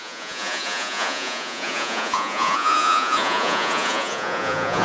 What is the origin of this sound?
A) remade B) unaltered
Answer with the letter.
A